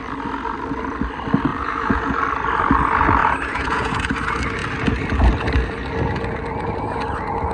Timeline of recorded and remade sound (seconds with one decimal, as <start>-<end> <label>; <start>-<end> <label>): 0.0-1.5 recorded; 1.5-2.2 remade; 2.2-3.2 recorded; 3.2-4.1 remade; 4.1-7.5 recorded